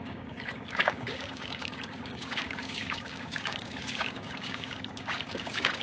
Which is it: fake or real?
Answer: fake